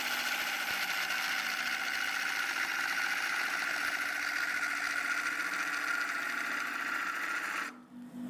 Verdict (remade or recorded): recorded